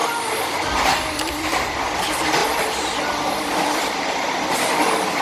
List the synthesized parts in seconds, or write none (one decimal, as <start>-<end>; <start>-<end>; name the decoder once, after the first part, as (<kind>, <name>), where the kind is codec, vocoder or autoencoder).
1.3-2.4 (vocoder, BigVGAN v2); 3.1-5.2